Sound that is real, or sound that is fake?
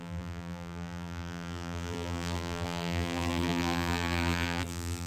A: fake